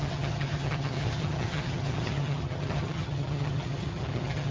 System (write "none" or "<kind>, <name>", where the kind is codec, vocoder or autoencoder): vocoder, HiFi-GAN